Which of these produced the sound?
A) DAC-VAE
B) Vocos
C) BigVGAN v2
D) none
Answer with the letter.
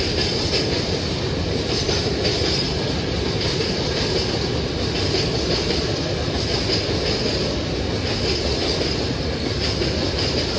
D